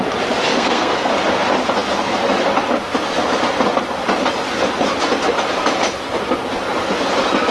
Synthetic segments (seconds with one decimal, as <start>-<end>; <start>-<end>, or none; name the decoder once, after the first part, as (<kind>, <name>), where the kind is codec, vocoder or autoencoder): 0.5-1.1 (codec, SNAC)